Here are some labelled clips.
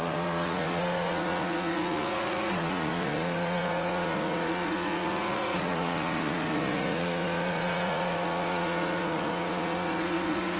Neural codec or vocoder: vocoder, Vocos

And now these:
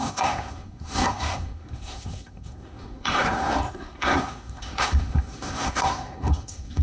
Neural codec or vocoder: codec, SNAC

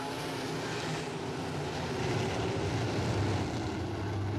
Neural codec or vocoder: none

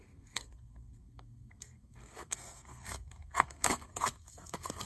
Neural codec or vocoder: codec, SNAC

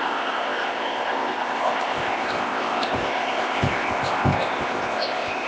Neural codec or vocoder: codec, ZipCodec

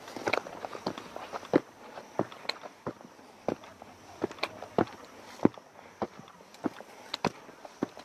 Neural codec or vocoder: none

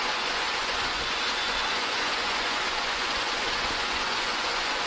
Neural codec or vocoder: vocoder, Vocos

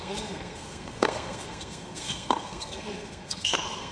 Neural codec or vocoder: codec, SNAC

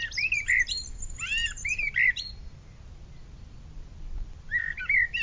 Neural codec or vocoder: none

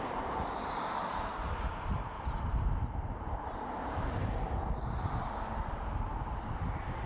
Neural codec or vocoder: vocoder, BigVGAN v2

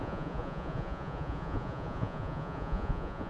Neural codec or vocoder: vocoder, Vocos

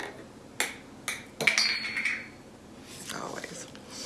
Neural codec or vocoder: none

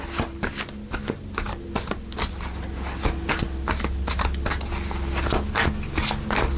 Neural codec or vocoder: none